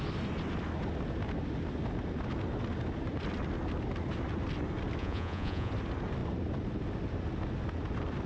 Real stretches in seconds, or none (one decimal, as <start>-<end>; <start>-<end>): 0.0-5.0; 5.7-8.3